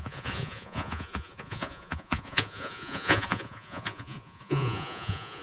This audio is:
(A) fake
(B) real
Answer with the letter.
A